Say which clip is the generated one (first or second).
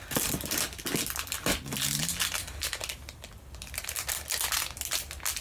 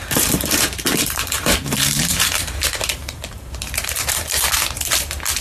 second